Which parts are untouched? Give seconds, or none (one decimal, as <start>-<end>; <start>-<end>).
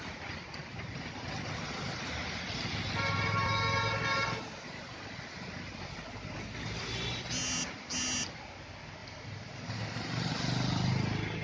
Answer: 0.0-9.0; 10.3-11.4